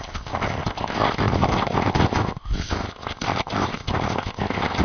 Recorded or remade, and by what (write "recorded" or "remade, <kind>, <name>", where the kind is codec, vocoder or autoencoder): remade, codec, ZipCodec